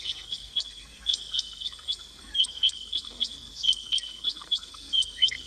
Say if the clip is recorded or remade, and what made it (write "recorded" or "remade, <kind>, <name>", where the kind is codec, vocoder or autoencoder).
remade, codec, SNAC